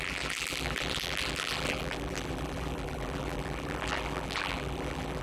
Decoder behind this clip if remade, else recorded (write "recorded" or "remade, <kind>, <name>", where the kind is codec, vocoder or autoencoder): remade, vocoder, BigVGAN v2